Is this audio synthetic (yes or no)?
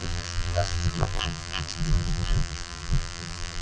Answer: yes